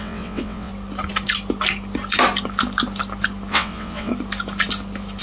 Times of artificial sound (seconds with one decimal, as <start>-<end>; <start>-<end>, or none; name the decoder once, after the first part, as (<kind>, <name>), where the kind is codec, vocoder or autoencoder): 0.0-0.7 (vocoder, WaveNeXt); 3.5-4.1